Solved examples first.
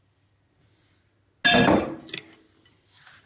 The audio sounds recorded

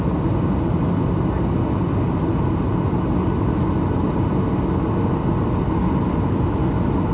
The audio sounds recorded